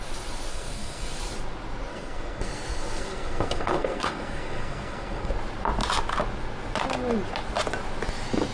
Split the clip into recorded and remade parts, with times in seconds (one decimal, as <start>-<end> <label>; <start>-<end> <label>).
0.0-0.5 recorded; 0.5-1.2 remade; 1.2-1.9 recorded; 1.9-5.3 remade; 5.3-8.5 recorded